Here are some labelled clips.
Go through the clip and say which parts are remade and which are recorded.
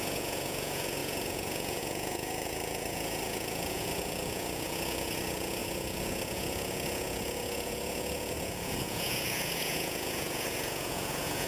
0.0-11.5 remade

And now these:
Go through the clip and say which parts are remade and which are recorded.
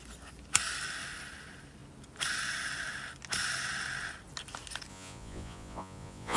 0.0-4.9 recorded; 4.9-6.4 remade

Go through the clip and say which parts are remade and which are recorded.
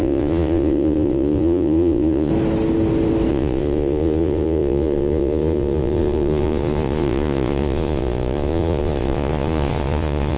0.0-2.3 remade; 2.3-3.3 recorded; 3.3-10.4 remade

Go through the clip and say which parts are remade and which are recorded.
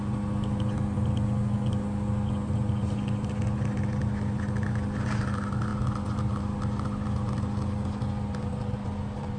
0.0-9.4 recorded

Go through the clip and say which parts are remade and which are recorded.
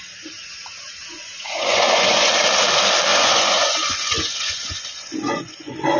0.0-1.0 recorded; 1.0-2.3 remade; 2.3-3.1 recorded; 3.1-6.0 remade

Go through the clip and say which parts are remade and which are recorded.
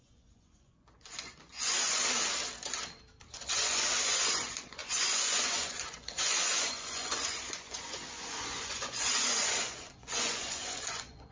0.0-2.0 remade; 2.0-3.3 recorded; 3.3-11.3 remade